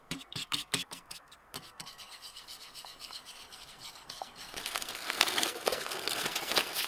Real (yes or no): no